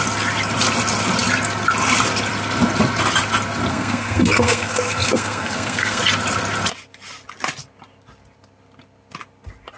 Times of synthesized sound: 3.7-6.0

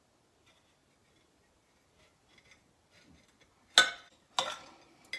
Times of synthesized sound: none

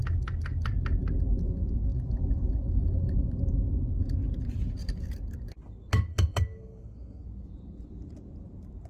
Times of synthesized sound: 6.1-7.2